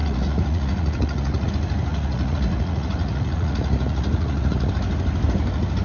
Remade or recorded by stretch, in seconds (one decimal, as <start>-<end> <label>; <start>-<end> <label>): 0.0-1.5 remade; 1.5-1.9 recorded; 1.9-4.7 remade; 4.7-5.8 recorded